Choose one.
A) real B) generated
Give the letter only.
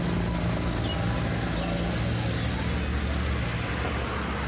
A